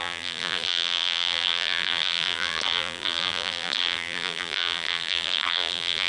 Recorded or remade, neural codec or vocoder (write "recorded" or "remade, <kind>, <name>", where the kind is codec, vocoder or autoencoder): remade, vocoder, BigVGAN v2